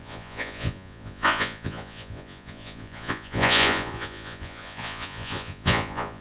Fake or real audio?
fake